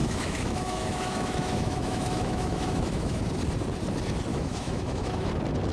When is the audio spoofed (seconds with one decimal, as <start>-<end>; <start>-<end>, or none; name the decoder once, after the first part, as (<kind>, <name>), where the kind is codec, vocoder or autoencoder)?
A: 0.0-3.2 (autoencoder, DAC-VAE); 4.3-5.3